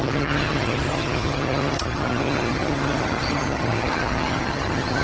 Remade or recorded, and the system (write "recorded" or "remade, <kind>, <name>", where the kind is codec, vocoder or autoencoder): remade, vocoder, HiFi-GAN